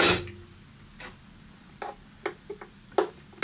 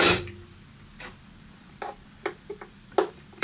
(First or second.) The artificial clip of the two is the second